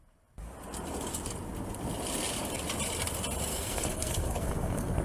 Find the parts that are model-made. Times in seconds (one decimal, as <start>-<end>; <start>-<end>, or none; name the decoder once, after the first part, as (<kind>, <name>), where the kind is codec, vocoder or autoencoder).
3.5-5.0 (codec, SNAC)